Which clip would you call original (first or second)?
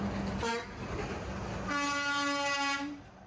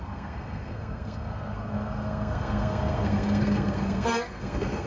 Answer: first